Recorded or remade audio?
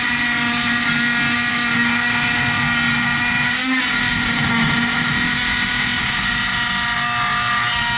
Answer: recorded